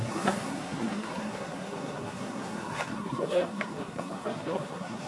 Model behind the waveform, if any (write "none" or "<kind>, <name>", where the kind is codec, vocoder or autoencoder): codec, SNAC